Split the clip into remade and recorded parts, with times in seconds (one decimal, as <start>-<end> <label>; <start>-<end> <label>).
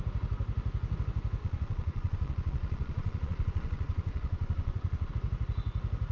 0.0-1.4 recorded; 1.4-5.1 remade; 5.1-6.1 recorded